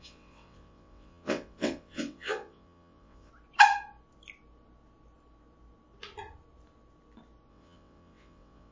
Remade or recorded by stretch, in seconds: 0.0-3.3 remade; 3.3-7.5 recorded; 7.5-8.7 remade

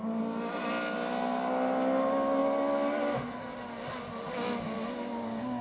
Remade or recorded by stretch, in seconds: 0.0-5.6 recorded

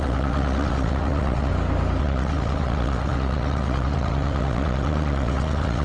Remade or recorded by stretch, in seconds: 0.0-1.5 remade; 1.5-2.0 recorded; 2.0-5.8 remade

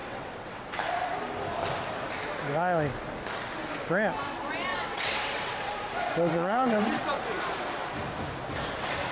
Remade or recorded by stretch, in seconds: 0.0-0.6 remade; 0.6-4.7 recorded; 4.7-5.7 remade; 5.7-6.3 recorded; 6.3-7.1 remade; 7.1-9.1 recorded

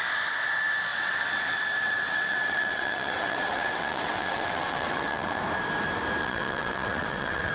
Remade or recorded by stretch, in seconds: 0.0-0.9 recorded; 0.9-5.4 remade; 5.4-6.2 recorded; 6.2-7.5 remade

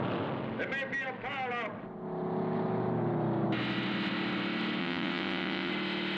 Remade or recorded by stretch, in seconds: 0.0-4.8 recorded; 4.8-5.7 remade; 5.7-6.2 recorded

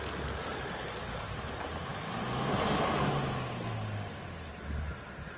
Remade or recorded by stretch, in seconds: 0.0-5.4 recorded